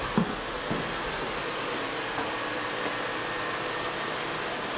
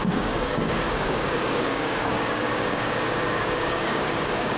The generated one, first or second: second